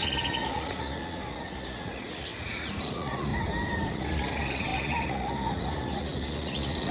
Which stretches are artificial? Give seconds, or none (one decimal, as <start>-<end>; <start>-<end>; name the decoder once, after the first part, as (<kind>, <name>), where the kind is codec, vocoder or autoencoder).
0.0-3.3 (vocoder, Vocos); 3.9-6.9